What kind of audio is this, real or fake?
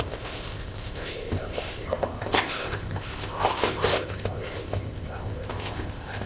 fake